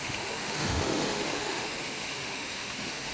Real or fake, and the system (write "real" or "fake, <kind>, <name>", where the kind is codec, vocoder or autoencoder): fake, autoencoder, DAC-VAE